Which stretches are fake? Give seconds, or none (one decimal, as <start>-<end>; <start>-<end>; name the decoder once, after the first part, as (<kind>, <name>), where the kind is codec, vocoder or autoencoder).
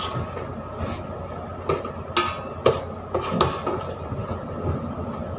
none